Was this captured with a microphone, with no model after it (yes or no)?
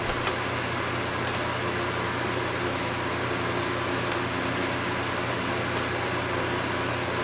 yes